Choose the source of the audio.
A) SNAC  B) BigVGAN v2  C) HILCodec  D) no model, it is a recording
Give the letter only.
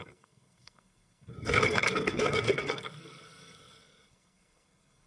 A